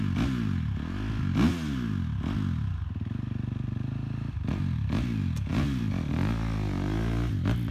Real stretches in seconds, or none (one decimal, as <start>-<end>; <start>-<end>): 0.0-5.5; 6.1-7.7